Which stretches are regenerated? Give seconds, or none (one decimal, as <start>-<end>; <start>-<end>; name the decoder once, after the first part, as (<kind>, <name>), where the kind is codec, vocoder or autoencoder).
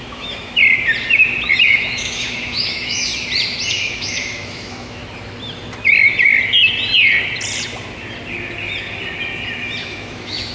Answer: 0.0-0.6 (autoencoder, DAC-VAE); 1.6-3.1; 3.7-5.0; 9.8-10.5